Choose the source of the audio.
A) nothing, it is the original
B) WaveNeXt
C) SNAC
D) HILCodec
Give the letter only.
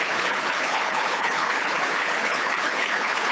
D